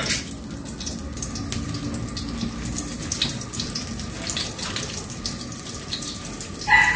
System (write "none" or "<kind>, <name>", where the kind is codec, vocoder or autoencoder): none